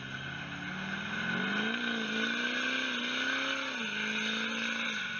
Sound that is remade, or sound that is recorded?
recorded